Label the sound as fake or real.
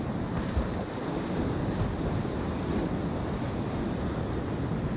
real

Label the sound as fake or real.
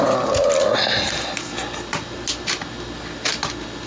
real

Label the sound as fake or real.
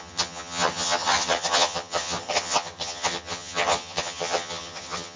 fake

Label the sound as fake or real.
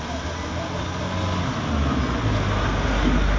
real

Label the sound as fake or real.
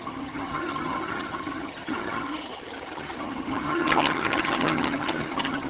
fake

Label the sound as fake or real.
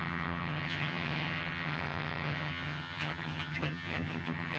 fake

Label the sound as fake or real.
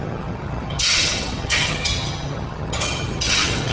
fake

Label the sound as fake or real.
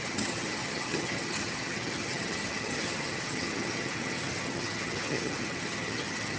fake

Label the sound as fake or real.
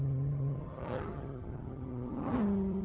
fake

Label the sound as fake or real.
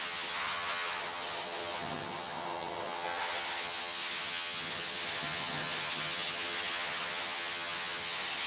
fake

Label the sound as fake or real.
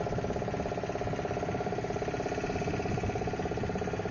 real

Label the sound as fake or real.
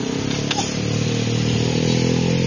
real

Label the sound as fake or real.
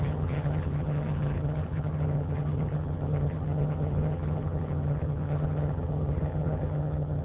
fake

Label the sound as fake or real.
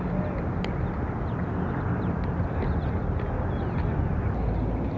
real